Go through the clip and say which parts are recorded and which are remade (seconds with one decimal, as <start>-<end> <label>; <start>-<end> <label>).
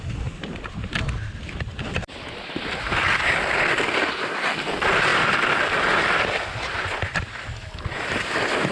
0.0-1.7 recorded; 1.7-2.5 remade; 2.5-5.1 recorded; 5.1-8.7 remade